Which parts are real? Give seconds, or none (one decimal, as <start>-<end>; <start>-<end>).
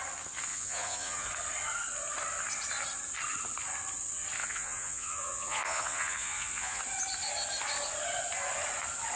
0.0-0.5; 1.3-4.4; 6.8-9.2